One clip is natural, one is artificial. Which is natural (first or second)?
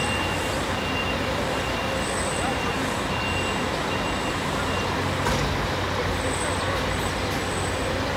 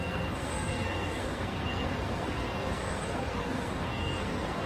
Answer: first